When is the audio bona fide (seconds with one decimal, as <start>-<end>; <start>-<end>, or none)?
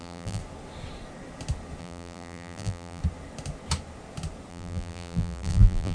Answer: 0.4-1.8; 3.0-4.5